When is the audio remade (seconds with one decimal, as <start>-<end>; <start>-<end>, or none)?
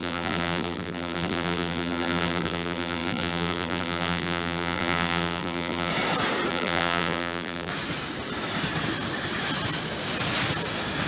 0.0-5.9; 6.5-7.7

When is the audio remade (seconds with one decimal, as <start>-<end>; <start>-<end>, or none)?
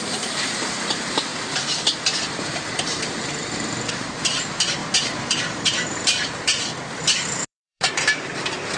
0.0-8.8